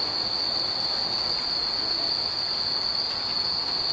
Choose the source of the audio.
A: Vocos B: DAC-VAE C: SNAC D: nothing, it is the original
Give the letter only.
D